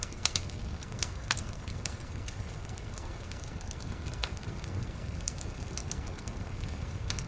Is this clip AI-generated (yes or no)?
yes